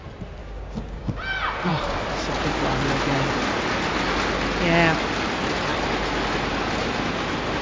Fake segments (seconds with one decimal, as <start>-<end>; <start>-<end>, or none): 0.4-1.2